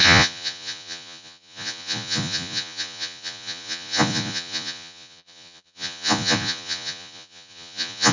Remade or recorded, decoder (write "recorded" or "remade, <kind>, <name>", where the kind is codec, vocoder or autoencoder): remade, vocoder, Vocos